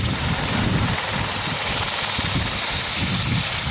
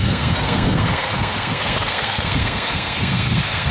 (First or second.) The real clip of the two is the first